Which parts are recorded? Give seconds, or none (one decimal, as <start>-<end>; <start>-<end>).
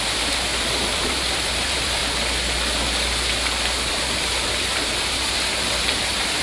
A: 2.0-3.9